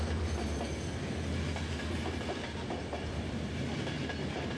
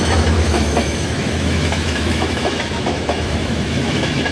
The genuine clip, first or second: first